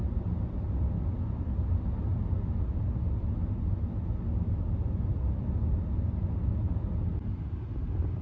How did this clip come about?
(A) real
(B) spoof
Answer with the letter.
A